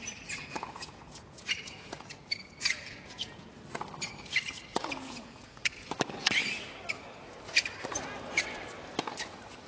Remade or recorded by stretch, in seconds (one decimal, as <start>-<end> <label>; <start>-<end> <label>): 0.0-0.4 recorded; 0.4-3.5 remade; 3.5-4.7 recorded; 4.7-5.7 remade; 5.7-9.7 recorded